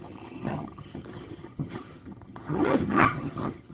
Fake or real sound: fake